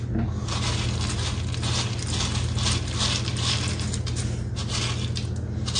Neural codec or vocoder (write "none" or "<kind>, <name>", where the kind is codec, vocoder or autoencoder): none